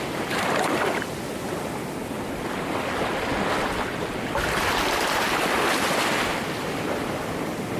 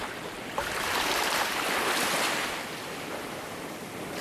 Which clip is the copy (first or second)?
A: second